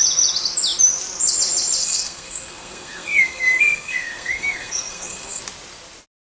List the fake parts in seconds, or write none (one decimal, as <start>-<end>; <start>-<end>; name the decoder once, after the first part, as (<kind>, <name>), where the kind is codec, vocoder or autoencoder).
1.8-5.4 (codec, SNAC)